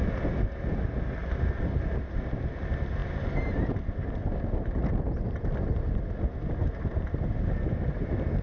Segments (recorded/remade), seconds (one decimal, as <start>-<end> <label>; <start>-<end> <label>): 0.0-8.4 recorded